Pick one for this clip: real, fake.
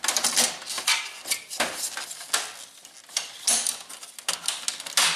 real